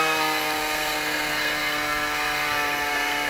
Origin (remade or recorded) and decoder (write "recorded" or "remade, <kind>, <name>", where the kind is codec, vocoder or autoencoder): remade, codec, SNAC